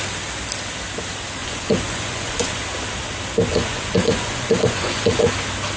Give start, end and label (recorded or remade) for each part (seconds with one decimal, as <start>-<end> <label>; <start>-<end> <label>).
0.0-1.4 recorded; 1.4-2.6 remade; 2.6-3.5 recorded; 3.5-5.3 remade; 5.3-5.8 recorded

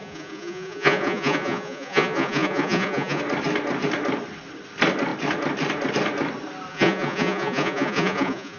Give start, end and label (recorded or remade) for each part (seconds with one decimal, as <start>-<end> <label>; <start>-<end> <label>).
0.0-3.2 remade; 3.2-6.7 recorded; 6.7-8.6 remade

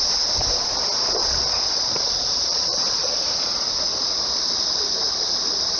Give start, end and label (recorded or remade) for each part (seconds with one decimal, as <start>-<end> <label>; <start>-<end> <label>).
0.0-1.2 recorded; 1.2-3.7 remade; 3.7-5.8 recorded

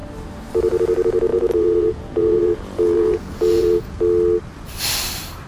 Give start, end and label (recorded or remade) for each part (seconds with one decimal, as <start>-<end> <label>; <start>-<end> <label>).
0.0-1.3 recorded; 1.3-4.0 remade; 4.0-5.5 recorded